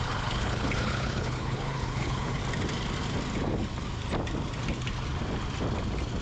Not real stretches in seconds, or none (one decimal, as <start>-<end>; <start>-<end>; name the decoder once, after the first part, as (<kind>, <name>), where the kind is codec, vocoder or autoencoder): 0.0-2.4 (codec, HILCodec)

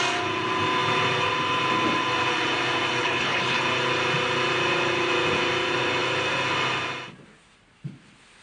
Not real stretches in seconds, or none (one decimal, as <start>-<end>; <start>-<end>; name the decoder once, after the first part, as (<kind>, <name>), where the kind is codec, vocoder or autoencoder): 3.0-3.6 (codec, HILCodec)

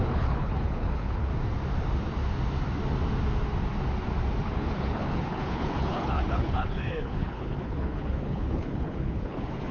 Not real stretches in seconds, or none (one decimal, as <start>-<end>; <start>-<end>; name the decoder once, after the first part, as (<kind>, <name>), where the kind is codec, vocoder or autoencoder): 0.0-1.3 (codec, HILCodec); 4.4-9.7

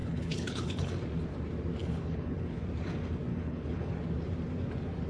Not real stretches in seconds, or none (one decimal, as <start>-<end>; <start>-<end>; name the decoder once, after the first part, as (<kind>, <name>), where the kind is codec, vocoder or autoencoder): 0.0-0.9 (codec, HILCodec); 1.8-2.6; 3.3-3.9